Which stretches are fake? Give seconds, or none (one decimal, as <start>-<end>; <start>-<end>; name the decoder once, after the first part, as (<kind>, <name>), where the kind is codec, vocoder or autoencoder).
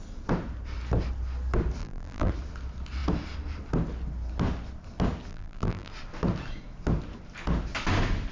1.8-2.3 (vocoder, BigVGAN v2); 5.3-5.9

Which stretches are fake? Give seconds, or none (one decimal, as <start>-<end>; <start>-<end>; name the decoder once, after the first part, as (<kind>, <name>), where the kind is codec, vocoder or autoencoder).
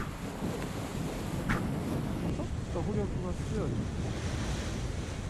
none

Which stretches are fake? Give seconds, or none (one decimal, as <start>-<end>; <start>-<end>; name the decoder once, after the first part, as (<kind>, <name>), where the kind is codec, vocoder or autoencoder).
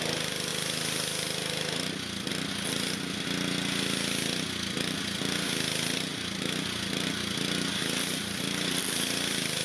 none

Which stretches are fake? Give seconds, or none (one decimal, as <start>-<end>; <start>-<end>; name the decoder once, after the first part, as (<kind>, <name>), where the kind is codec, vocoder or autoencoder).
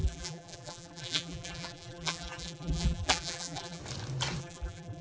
0.0-3.8 (vocoder, BigVGAN v2); 4.4-5.0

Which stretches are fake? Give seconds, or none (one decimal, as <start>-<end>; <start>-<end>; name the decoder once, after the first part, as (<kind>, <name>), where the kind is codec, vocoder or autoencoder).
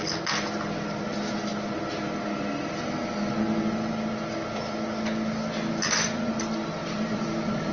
6.8-7.7 (vocoder, BigVGAN v2)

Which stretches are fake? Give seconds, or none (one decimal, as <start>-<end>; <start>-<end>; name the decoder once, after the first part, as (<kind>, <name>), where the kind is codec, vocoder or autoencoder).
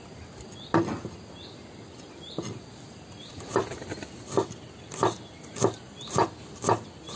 3.6-5.5 (vocoder, BigVGAN v2)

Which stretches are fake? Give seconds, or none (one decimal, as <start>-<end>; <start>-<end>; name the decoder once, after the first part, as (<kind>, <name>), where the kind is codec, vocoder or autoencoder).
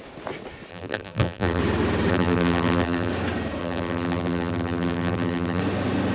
0.7-1.6 (vocoder, BigVGAN v2); 2.1-3.1; 3.6-5.6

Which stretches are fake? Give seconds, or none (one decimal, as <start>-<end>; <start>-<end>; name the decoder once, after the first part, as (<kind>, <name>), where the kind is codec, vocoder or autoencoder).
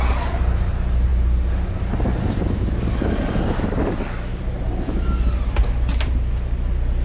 4.3-5.1 (vocoder, BigVGAN v2)